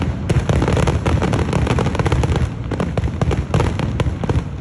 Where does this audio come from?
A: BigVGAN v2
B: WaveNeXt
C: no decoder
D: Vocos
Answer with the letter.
C